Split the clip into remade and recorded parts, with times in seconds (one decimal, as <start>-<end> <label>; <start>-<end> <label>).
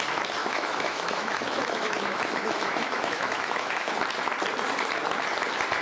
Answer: 0.0-0.4 recorded; 0.4-3.9 remade; 3.9-5.8 recorded